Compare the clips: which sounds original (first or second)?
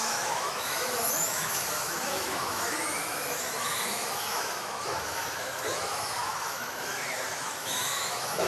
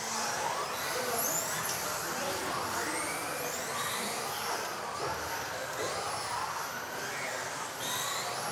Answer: second